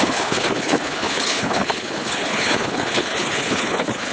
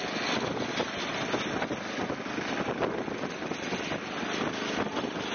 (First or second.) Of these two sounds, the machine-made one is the first